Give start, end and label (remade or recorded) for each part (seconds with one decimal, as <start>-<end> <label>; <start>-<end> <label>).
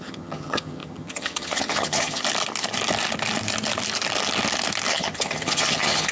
0.0-2.2 remade; 2.2-4.9 recorded; 4.9-6.1 remade